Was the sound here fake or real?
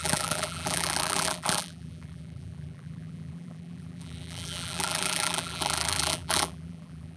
fake